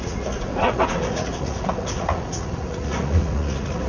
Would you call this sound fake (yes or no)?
yes